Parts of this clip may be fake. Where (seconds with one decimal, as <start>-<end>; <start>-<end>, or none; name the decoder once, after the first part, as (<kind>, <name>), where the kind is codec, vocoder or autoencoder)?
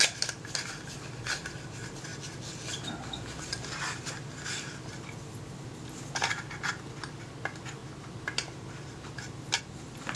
none